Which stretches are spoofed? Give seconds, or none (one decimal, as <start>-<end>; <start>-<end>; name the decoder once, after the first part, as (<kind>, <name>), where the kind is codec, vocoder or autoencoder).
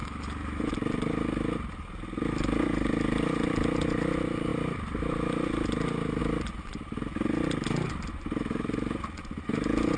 0.0-0.7 (autoencoder, DAC-VAE)